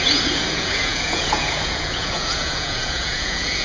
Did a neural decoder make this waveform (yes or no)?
yes